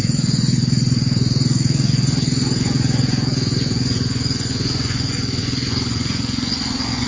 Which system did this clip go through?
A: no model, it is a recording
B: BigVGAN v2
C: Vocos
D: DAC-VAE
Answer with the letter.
C